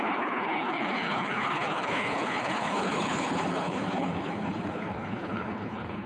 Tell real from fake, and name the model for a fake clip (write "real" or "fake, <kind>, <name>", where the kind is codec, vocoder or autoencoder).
fake, codec, HILCodec